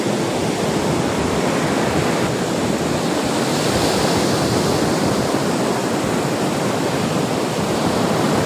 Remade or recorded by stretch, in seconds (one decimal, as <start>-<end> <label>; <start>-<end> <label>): 0.0-0.4 recorded; 0.4-2.0 remade; 2.0-8.5 recorded